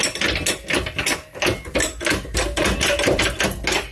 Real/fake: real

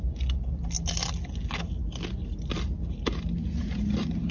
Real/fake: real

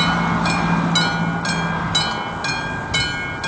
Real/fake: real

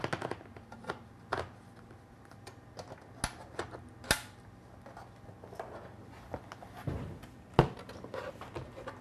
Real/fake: real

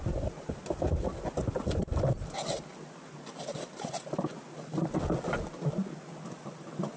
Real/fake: real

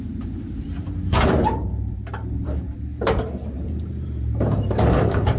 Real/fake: fake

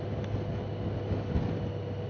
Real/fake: real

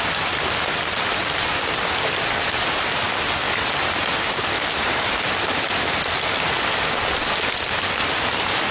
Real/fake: real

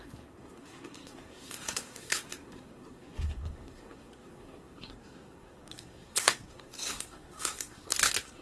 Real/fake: fake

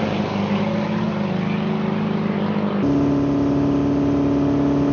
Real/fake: real